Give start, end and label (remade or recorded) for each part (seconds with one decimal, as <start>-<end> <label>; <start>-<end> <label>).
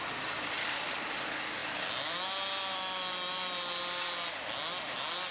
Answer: 0.0-5.3 recorded